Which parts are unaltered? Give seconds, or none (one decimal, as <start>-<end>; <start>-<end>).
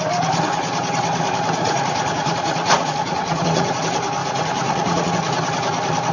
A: 0.0-1.6; 3.8-4.2; 5.1-6.1